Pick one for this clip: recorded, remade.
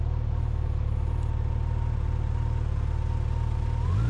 recorded